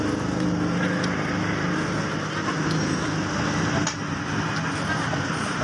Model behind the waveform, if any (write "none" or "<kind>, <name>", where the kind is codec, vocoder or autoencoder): none